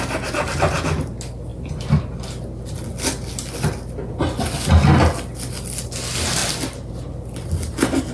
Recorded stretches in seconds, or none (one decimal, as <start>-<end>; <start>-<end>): 0.0-8.1